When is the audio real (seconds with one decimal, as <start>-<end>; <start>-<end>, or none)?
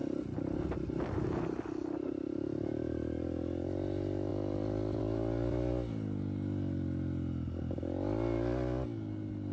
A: 0.0-9.5